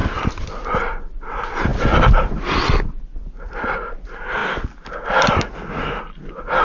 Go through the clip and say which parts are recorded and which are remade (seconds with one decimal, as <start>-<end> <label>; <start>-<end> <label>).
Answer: 0.0-6.6 recorded